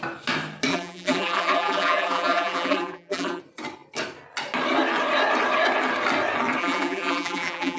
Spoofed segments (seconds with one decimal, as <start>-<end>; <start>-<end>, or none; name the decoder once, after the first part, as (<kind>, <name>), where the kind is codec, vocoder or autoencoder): 0.7-3.4 (vocoder, BigVGAN v2); 6.6-7.8

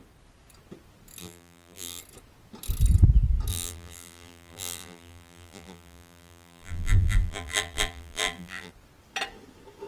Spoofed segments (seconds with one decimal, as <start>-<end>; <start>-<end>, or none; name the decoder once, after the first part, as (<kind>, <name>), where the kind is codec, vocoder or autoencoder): 1.2-2.0 (vocoder, BigVGAN v2); 3.5-8.7